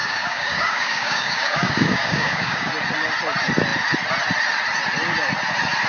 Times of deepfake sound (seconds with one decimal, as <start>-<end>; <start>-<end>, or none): 0.0-2.7